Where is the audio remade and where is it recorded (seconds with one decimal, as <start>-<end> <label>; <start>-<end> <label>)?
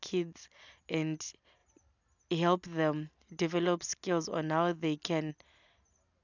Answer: 0.0-6.2 recorded